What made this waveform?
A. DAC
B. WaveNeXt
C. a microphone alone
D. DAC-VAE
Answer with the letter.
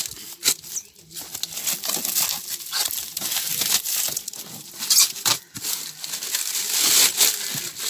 C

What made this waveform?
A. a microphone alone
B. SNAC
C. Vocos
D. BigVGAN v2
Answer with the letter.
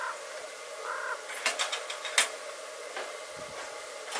A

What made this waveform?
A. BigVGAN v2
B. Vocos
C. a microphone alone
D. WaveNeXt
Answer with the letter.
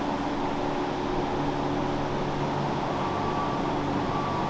C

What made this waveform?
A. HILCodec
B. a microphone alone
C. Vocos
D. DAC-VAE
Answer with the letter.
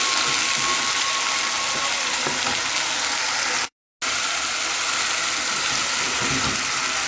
B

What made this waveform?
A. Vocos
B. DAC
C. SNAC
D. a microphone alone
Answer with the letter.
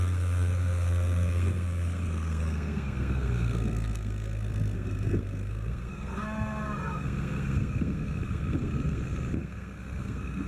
C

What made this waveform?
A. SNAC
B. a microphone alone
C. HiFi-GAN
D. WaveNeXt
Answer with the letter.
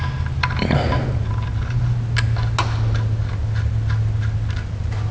B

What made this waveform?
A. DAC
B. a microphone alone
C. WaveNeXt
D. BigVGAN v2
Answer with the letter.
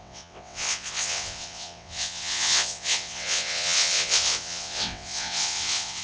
C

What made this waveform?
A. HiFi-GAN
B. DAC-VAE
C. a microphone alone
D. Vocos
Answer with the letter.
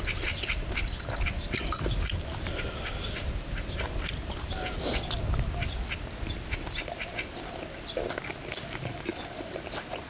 C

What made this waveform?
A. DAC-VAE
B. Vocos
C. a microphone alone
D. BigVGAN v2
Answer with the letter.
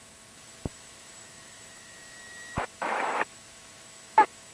A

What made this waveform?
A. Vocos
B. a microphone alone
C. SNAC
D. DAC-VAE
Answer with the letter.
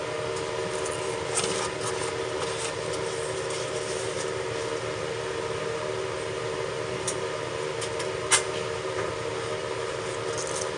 B